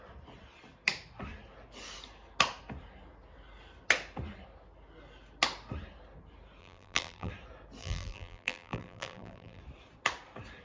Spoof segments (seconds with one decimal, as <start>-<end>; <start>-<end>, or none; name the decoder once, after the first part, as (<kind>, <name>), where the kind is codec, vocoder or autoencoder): 6.6-7.3 (vocoder, BigVGAN v2); 7.8-9.6